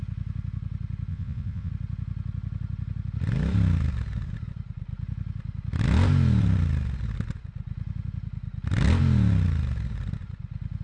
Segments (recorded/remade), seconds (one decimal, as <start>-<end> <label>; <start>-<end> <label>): 0.0-1.1 recorded; 1.1-1.7 remade; 1.7-10.8 recorded